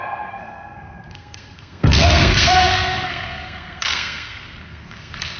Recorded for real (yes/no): no